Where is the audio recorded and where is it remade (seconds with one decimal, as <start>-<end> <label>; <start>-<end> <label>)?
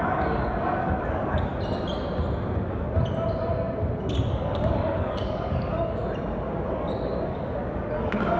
0.0-1.5 remade; 1.5-4.3 recorded; 4.3-6.0 remade; 6.0-6.7 recorded; 6.7-8.4 remade